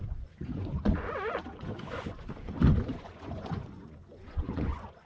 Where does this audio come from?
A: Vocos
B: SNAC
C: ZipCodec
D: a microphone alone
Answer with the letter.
A